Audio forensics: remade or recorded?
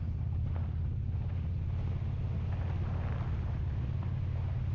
recorded